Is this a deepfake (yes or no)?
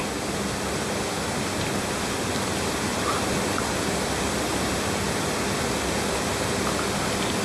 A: no